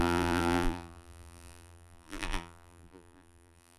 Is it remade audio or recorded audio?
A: remade